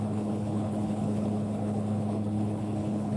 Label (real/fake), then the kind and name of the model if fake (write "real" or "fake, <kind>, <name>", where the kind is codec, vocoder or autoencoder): fake, codec, HILCodec